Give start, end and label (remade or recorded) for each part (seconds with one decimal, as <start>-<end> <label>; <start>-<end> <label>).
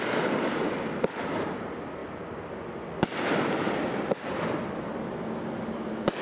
0.0-6.2 recorded